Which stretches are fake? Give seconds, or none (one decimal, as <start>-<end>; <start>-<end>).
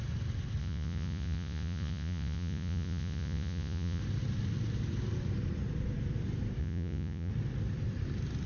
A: 0.6-4.0; 6.6-7.3